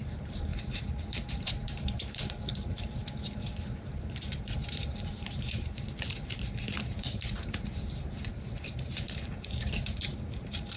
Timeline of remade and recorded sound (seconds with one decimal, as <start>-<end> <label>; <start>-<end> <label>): 0.0-10.8 remade